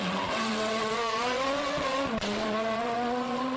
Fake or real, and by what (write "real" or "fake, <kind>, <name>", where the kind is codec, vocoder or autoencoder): fake, vocoder, WaveNeXt